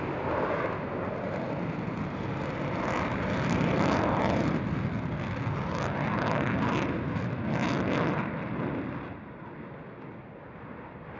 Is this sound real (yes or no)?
yes